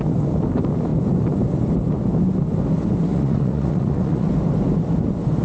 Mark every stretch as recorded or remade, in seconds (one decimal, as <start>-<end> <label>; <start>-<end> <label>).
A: 0.0-3.1 recorded; 3.1-4.3 remade; 4.3-5.4 recorded